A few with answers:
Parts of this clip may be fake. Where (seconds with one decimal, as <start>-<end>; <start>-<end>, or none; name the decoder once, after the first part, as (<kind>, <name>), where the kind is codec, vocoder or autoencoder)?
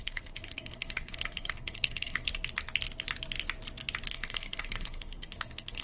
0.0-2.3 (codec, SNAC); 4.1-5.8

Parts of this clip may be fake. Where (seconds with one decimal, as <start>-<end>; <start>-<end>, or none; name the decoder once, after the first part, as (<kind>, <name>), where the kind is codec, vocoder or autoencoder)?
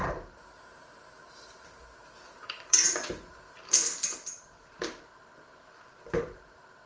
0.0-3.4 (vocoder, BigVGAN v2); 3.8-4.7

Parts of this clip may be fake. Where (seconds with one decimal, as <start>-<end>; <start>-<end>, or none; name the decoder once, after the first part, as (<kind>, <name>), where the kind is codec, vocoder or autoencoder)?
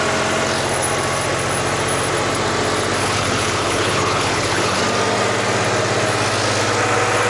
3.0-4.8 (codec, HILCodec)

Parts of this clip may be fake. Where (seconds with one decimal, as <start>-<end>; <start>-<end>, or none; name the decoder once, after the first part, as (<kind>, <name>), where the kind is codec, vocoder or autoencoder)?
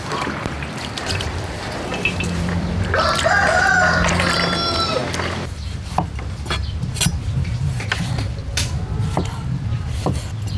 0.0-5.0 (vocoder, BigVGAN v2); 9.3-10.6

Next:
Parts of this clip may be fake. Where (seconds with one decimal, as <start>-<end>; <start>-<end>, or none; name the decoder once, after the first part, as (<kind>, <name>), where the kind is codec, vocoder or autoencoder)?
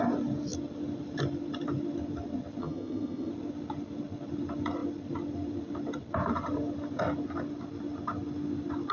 2.6-3.3 (vocoder, HiFi-GAN)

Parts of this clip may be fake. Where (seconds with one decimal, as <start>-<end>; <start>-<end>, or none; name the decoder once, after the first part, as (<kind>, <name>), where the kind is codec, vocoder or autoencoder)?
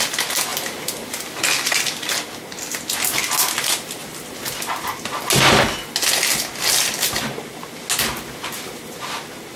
none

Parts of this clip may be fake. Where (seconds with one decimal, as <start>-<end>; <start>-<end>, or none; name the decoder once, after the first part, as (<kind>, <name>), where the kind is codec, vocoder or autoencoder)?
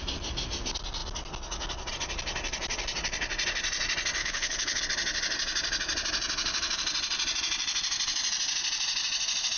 4.2-4.8 (codec, HILCodec)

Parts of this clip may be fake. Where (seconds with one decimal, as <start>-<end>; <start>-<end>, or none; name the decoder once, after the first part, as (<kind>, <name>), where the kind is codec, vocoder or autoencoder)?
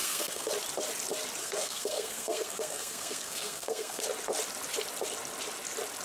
0.0-0.5 (codec, SNAC); 1.4-4.0